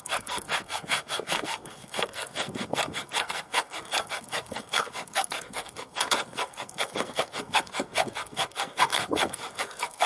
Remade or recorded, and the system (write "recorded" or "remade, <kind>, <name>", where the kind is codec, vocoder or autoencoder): remade, codec, SNAC